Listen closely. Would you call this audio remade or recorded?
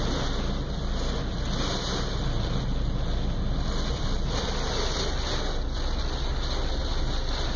recorded